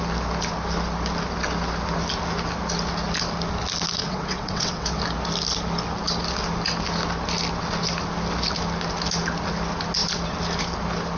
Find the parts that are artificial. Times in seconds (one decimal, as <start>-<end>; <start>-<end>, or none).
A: 4.0-5.0